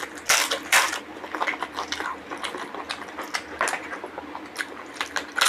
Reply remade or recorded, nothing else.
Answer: recorded